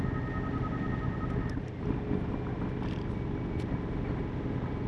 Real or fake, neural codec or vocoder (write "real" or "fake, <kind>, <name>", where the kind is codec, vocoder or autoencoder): real